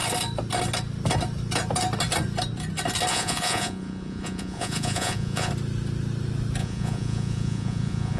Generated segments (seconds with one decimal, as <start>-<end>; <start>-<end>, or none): 3.1-5.5; 6.6-8.2